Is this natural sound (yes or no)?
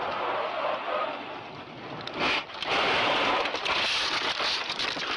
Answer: yes